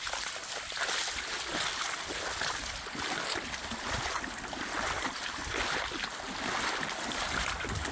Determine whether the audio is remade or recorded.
recorded